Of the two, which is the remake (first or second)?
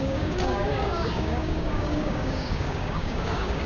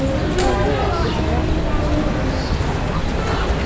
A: first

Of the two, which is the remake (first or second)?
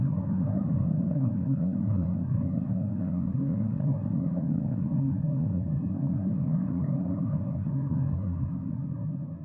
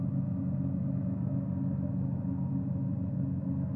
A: first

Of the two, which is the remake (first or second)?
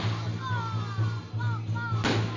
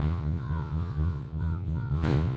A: second